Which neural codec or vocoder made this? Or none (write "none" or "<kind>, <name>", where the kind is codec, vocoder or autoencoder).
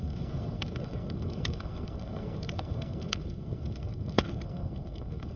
codec, SNAC